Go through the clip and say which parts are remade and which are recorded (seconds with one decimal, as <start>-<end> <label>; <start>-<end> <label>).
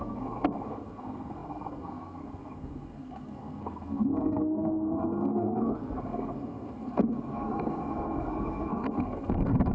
0.0-9.7 remade